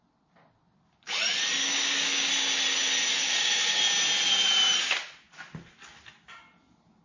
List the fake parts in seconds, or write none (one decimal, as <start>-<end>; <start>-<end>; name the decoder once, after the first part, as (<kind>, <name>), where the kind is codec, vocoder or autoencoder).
1.6-2.3 (codec, DAC); 3.1-3.8